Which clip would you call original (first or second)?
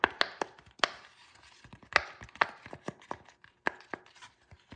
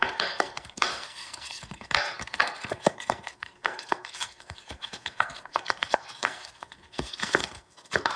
first